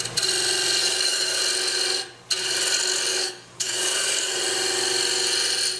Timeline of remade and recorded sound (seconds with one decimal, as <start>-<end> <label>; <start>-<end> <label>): 0.0-0.8 recorded; 0.8-1.4 remade; 1.4-3.1 recorded; 3.1-4.4 remade; 4.4-5.8 recorded

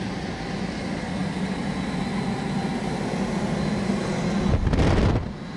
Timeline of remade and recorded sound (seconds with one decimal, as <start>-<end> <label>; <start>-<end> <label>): 0.0-5.6 recorded